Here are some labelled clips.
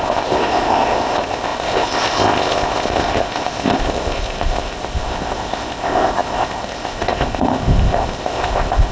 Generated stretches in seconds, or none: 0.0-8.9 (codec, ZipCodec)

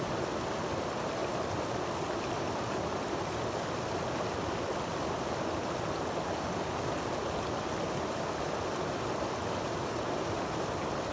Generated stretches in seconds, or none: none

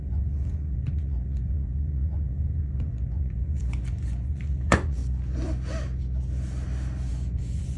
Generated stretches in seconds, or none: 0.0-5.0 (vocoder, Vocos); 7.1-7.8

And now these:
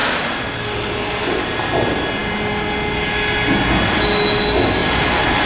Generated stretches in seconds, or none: none

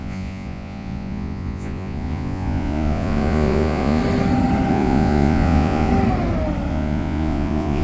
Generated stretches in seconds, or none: 0.0-4.0 (vocoder, Vocos); 4.7-5.9; 6.7-7.8